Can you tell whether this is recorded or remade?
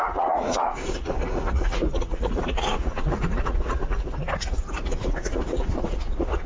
remade